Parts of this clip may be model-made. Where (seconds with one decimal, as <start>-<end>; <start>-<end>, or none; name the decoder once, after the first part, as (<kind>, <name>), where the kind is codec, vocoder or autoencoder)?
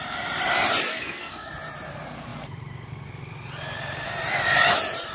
0.9-1.5 (codec, SNAC)